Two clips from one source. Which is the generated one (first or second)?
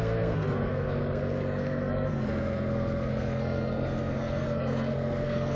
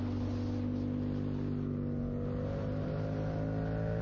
first